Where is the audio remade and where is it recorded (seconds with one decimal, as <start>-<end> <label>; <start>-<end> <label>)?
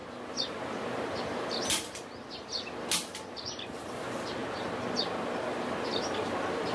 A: 0.0-6.7 recorded